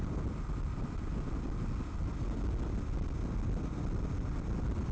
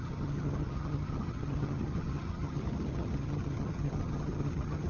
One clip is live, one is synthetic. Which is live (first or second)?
first